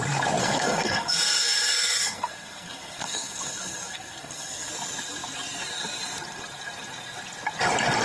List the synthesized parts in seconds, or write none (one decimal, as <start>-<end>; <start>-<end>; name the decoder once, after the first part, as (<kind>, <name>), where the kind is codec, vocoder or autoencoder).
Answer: 0.4-4.7 (codec, SNAC)